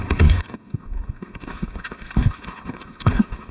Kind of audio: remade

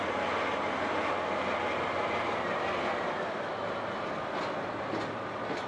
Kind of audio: recorded